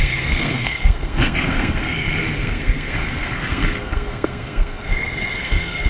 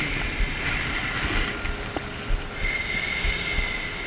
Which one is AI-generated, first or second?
first